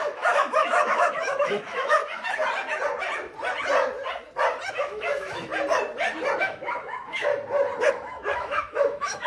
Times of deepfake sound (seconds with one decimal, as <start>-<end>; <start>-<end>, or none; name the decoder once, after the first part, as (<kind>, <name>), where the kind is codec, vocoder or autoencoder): 0.0-2.0 (autoencoder, DAC-VAE); 4.7-5.5; 6.4-7.3; 7.9-9.3